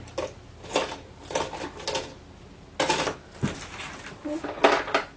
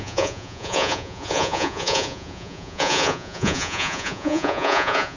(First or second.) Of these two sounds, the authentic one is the first